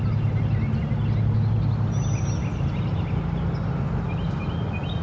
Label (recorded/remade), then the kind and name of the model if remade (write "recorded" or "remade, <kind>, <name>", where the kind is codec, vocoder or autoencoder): recorded